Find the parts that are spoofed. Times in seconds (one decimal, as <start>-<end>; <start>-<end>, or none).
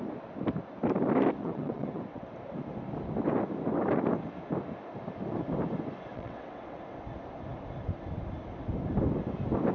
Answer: 1.4-2.3; 6.1-6.8